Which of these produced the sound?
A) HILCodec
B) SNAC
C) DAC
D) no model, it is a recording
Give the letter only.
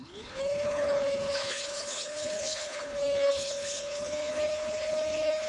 A